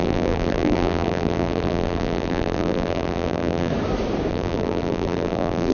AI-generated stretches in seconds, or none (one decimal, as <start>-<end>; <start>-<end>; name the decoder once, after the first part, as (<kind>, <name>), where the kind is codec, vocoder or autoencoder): 0.0-3.7 (vocoder, BigVGAN v2); 4.3-5.7